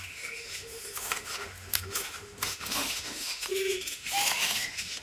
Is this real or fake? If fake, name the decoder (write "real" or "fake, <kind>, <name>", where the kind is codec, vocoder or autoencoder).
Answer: fake, autoencoder, DAC-VAE